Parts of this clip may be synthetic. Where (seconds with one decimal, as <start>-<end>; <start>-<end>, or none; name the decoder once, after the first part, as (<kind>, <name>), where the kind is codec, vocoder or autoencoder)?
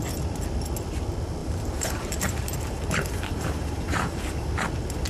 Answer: 1.4-4.5 (vocoder, BigVGAN v2)